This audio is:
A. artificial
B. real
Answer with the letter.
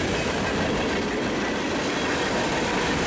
A